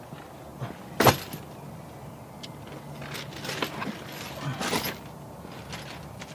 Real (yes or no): yes